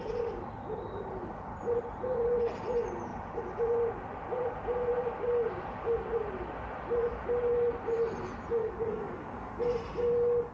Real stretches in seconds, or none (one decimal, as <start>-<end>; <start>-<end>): 0.0-8.6; 9.6-10.5